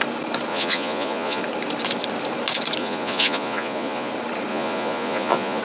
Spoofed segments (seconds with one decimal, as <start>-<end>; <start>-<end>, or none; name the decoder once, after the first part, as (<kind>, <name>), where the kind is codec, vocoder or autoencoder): 0.5-1.4 (vocoder, Vocos); 2.8-4.1; 4.5-5.6